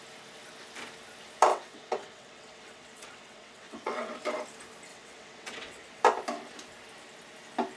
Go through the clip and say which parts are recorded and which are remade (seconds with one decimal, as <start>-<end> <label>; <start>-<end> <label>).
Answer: 0.0-1.5 recorded; 1.5-4.1 remade; 4.1-4.9 recorded; 4.9-6.0 remade; 6.0-7.8 recorded